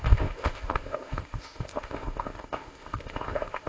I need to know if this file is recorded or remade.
remade